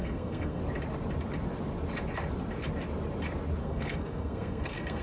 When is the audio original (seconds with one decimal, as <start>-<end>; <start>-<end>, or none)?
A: 0.6-3.6